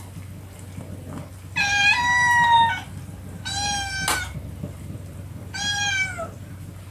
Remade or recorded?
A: recorded